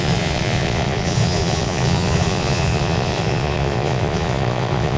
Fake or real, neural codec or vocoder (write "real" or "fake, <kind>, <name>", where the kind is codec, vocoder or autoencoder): fake, vocoder, Vocos